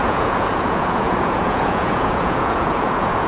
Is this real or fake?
fake